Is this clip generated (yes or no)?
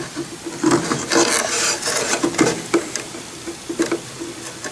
no